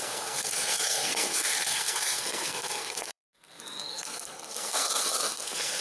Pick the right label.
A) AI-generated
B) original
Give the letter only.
A